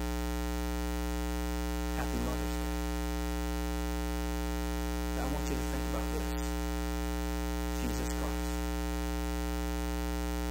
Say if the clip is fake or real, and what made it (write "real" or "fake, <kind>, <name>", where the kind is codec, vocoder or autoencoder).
real